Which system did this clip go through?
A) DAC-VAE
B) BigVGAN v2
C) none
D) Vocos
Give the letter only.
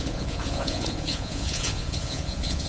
D